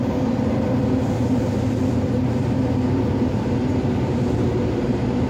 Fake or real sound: real